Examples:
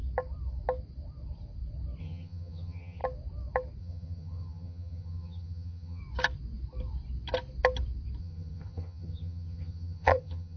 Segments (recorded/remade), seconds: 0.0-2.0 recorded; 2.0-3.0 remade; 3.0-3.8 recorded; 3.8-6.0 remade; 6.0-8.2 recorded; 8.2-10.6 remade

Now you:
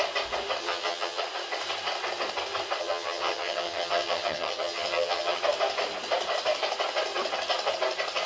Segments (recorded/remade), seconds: 0.0-0.6 recorded; 0.6-1.2 remade; 1.2-2.8 recorded; 2.8-5.4 remade; 5.4-8.3 recorded

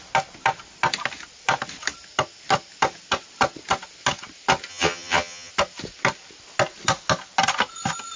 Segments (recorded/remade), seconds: 0.0-4.7 recorded; 4.7-5.5 remade; 5.5-8.2 recorded

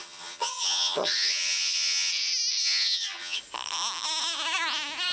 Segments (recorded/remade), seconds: 0.0-2.1 remade; 2.1-2.6 recorded; 2.6-3.4 remade; 3.4-5.1 recorded

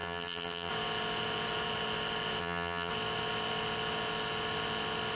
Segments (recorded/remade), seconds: 0.0-0.7 remade; 0.7-2.4 recorded; 2.4-2.9 remade; 2.9-5.2 recorded

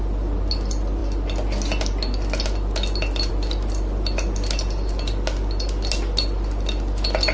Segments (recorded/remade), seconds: 0.0-7.3 recorded